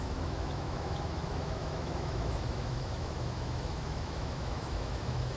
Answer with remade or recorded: remade